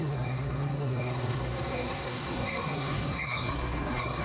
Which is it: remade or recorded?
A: remade